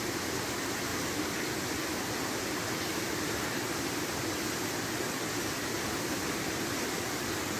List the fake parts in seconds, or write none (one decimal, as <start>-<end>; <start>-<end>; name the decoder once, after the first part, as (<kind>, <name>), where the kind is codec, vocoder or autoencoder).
none